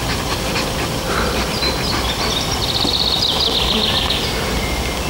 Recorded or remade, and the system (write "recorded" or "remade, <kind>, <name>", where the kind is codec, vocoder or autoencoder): recorded